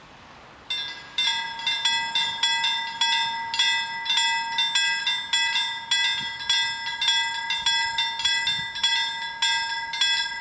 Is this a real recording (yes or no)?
yes